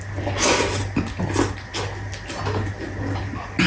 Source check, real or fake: real